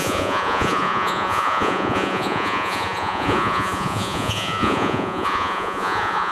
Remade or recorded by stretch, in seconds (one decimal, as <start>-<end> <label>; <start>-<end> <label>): 0.0-6.3 remade